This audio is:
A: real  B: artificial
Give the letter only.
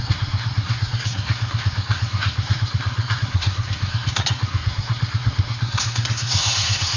B